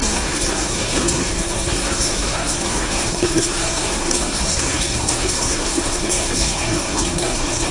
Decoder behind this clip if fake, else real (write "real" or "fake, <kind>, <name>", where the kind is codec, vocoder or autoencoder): fake, codec, SNAC